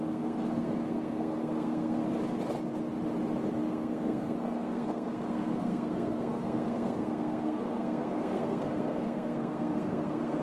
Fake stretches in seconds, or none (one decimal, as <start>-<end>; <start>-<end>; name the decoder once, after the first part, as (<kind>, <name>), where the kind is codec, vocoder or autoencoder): 0.0-2.0 (codec, SNAC); 3.6-10.4